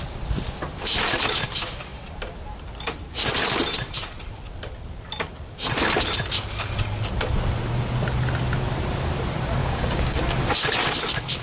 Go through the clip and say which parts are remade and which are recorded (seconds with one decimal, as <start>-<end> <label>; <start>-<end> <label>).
0.0-9.6 recorded; 9.6-10.2 remade; 10.2-11.4 recorded